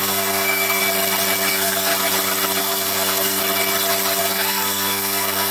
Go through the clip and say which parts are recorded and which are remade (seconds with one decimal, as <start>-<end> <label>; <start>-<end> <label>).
0.0-0.8 remade; 0.8-1.5 recorded; 1.5-1.9 remade; 1.9-2.6 recorded; 2.6-3.4 remade; 3.4-4.2 recorded; 4.2-5.5 remade